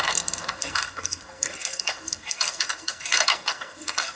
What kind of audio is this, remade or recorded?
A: remade